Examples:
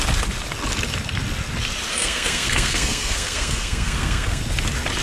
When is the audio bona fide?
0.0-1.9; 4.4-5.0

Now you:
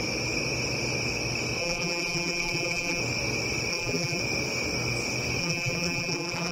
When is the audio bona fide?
0.0-1.6; 3.0-3.7; 4.2-5.4

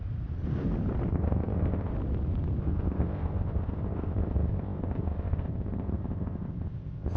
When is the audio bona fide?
0.0-1.1; 1.9-2.6

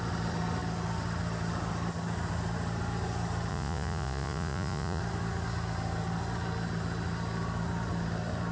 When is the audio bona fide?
0.0-3.5; 5.0-8.5

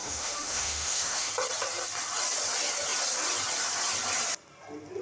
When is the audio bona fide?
1.3-5.0

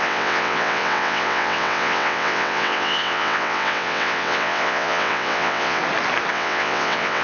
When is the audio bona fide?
5.8-6.3

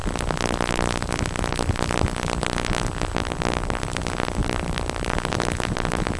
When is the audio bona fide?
0.0-3.2; 3.8-4.4; 5.1-6.2

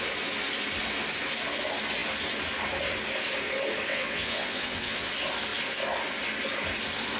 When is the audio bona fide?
0.0-3.9; 5.1-7.2